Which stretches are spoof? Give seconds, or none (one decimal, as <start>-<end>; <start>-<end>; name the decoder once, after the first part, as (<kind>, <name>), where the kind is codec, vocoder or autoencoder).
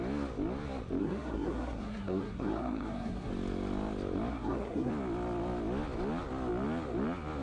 1.0-3.3 (codec, SNAC); 4.3-4.9